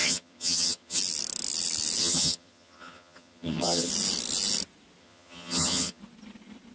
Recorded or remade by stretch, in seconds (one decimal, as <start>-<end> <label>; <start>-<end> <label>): 0.0-1.0 remade; 1.0-2.0 recorded; 2.0-3.9 remade; 3.9-5.0 recorded; 5.0-6.0 remade; 6.0-6.7 recorded